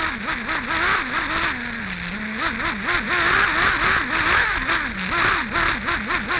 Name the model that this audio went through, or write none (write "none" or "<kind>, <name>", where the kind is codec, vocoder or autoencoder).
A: none